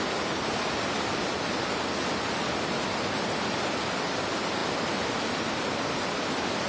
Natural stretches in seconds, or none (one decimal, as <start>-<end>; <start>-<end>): 0.0-6.7